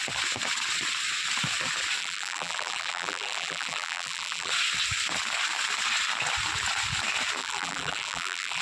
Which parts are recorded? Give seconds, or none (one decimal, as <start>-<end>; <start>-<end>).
0.0-2.0; 4.5-7.4